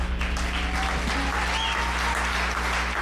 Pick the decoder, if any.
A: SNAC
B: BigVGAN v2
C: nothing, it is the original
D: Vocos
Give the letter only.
C